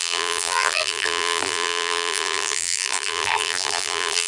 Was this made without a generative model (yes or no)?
no